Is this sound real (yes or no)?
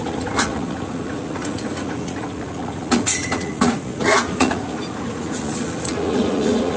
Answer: no